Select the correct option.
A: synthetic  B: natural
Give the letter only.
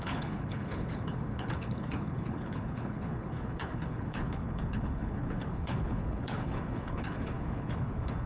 A